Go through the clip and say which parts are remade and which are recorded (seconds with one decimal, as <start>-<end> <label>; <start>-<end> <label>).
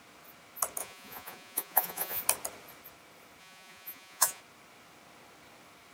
0.0-0.8 recorded; 0.8-2.2 remade; 2.2-3.4 recorded; 3.4-4.4 remade; 4.4-5.9 recorded